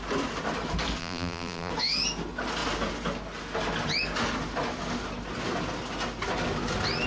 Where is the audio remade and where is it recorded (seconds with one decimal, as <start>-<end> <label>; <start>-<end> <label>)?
0.0-1.0 recorded; 1.0-1.7 remade; 1.7-7.1 recorded

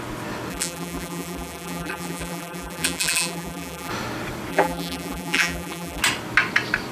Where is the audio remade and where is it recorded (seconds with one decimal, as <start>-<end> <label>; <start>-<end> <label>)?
0.0-0.5 recorded; 0.5-3.9 remade; 3.9-4.5 recorded; 4.5-6.0 remade; 6.0-6.9 recorded

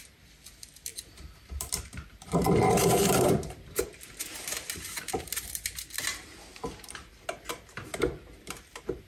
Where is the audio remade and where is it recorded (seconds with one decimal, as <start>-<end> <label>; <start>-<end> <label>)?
0.0-0.9 recorded; 0.9-6.0 remade; 6.0-9.1 recorded

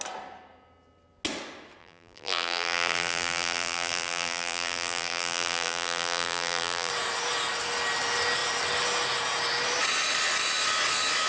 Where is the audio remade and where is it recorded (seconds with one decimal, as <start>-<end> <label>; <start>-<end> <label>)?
0.0-1.8 recorded; 1.8-6.9 remade; 6.9-11.3 recorded

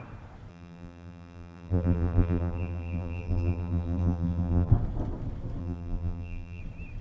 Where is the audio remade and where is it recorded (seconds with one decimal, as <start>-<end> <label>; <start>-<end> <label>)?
0.0-0.5 recorded; 0.5-4.7 remade; 4.7-5.6 recorded; 5.6-6.6 remade; 6.6-7.0 recorded

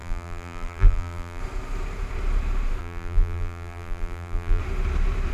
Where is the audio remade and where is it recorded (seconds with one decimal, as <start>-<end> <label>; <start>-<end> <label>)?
0.0-1.4 remade; 1.4-2.8 recorded; 2.8-4.6 remade; 4.6-5.3 recorded

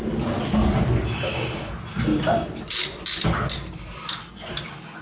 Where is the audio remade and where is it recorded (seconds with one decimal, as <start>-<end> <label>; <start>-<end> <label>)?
0.0-5.0 recorded